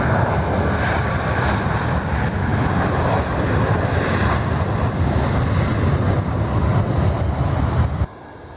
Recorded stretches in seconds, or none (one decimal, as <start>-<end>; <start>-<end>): 0.0-8.6